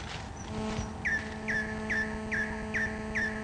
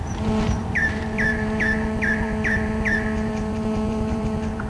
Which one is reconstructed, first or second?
second